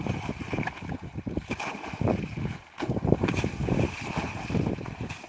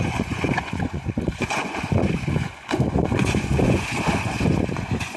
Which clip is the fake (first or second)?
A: second